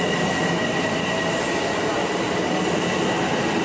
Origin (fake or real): real